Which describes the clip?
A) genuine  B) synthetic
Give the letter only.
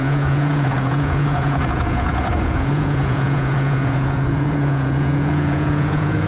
B